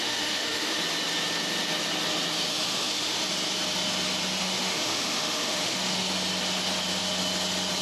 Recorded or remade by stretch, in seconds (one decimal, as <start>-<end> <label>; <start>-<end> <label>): 0.0-0.8 remade; 0.8-2.5 recorded; 2.5-3.2 remade; 3.2-4.4 recorded; 4.4-6.1 remade; 6.1-7.8 recorded